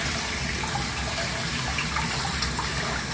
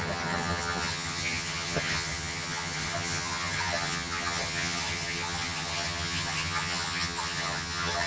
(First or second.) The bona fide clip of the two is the first